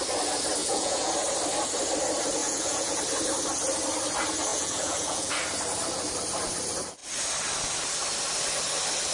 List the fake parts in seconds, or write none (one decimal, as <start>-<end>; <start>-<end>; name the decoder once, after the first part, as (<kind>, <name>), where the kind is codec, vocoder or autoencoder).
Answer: 0.6-1.1 (vocoder, Vocos); 2.4-3.0; 4.5-5.3